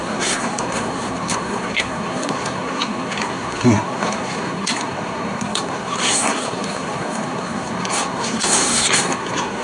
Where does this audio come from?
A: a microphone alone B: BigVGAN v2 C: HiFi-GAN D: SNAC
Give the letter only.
D